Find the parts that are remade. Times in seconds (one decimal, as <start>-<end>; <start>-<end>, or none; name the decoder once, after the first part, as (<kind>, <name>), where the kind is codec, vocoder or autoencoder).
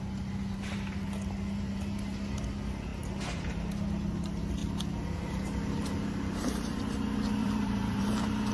4.6-6.8 (vocoder, BigVGAN v2); 7.4-8.0